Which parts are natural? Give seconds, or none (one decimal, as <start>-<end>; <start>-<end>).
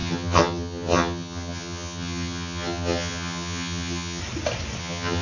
4.2-4.8